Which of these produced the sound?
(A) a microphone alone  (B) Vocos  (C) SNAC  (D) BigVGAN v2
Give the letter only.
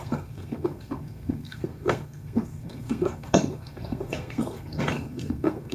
C